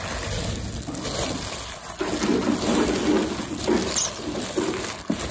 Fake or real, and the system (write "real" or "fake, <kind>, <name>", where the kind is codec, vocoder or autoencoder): real